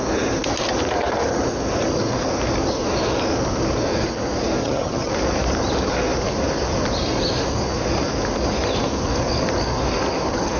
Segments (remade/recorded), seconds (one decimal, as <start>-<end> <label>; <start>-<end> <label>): 0.0-4.6 recorded; 4.6-5.1 remade; 5.1-10.6 recorded